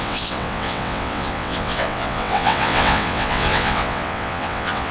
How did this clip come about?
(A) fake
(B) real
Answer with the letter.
A